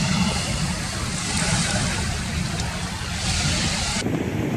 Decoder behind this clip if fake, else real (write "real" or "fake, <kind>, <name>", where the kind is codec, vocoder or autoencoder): real